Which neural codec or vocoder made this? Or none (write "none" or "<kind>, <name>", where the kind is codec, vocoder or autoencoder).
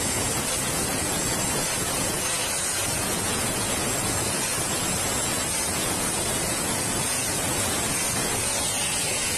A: vocoder, Vocos